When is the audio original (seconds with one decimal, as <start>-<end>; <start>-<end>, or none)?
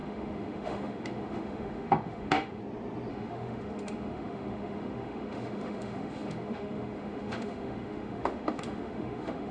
2.6-3.1